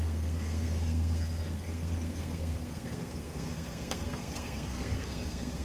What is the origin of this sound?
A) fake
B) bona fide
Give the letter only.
A